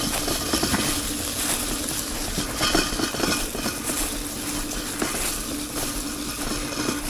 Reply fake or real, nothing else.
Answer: real